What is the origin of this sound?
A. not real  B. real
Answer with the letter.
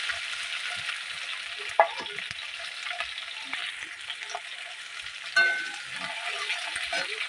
B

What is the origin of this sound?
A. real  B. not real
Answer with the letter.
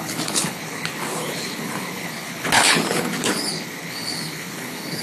B